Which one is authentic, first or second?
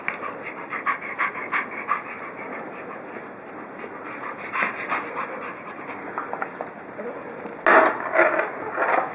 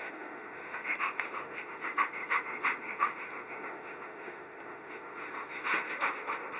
first